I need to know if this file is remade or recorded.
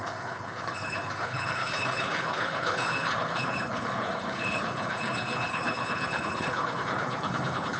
remade